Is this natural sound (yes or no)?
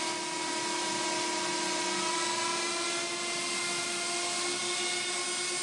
yes